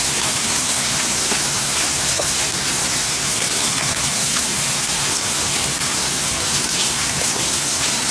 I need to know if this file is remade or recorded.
remade